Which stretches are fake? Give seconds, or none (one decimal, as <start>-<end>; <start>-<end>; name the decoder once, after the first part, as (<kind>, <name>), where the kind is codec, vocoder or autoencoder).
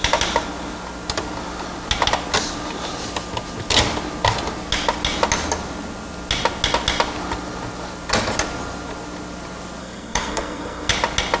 9.8-10.9 (codec, SNAC)